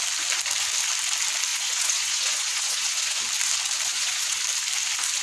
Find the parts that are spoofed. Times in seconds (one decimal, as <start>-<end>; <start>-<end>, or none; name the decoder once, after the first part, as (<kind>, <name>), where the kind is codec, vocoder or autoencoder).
1.5-3.2 (vocoder, Vocos); 3.9-4.4